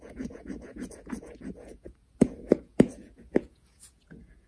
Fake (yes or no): yes